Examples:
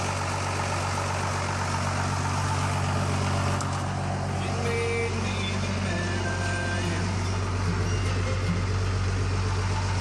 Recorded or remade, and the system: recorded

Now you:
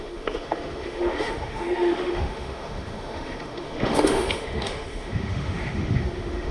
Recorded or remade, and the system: remade, autoencoder, DAC-VAE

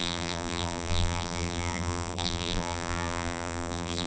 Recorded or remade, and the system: remade, vocoder, BigVGAN v2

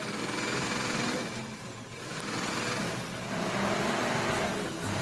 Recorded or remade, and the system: recorded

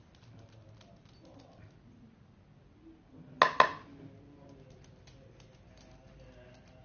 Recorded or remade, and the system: recorded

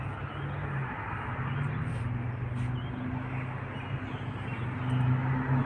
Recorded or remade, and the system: recorded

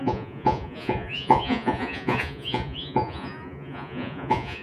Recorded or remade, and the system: remade, vocoder, Vocos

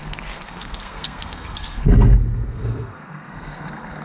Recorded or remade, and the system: remade, codec, SNAC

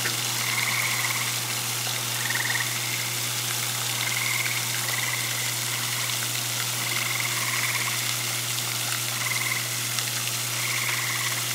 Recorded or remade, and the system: recorded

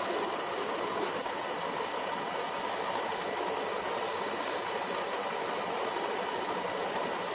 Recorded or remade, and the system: recorded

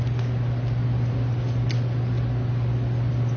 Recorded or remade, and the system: recorded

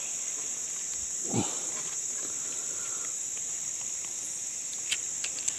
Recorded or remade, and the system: recorded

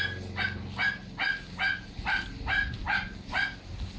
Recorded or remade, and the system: recorded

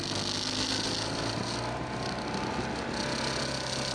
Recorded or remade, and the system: recorded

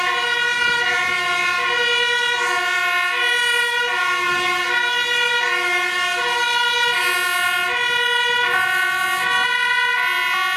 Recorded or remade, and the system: recorded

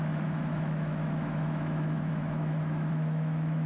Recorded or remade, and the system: remade, autoencoder, DAC-VAE